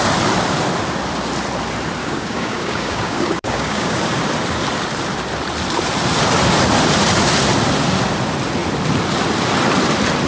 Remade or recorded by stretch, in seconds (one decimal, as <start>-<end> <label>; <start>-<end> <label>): 0.0-2.0 recorded; 2.0-4.0 remade; 4.0-10.3 recorded